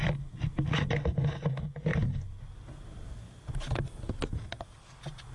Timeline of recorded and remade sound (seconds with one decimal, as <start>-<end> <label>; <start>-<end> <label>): 0.0-5.3 recorded